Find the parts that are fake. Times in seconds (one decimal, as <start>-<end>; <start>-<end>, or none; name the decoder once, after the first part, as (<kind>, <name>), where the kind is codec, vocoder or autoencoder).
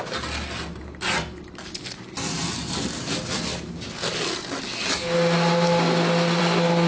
none